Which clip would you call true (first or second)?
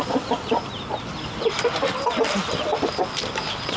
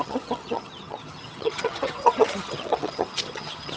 first